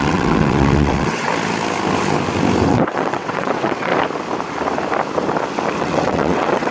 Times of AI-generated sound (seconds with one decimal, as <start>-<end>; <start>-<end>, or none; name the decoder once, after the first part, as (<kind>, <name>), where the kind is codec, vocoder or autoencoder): 0.0-1.3 (vocoder, WaveNeXt); 2.7-3.9; 5.8-6.7